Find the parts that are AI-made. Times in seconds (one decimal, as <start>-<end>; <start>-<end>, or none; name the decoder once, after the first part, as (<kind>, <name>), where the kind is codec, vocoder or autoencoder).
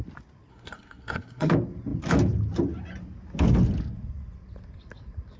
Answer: 0.5-1.5 (codec, SNAC)